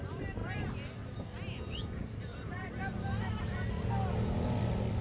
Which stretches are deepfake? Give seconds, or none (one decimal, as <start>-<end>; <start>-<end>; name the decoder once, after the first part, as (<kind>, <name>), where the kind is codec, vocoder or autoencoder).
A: 0.4-1.3 (vocoder, BigVGAN v2); 2.3-3.5